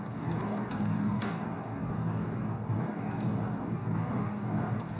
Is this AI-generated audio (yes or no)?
yes